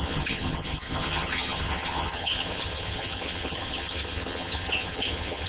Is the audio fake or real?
fake